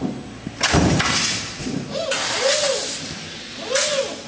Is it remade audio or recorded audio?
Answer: recorded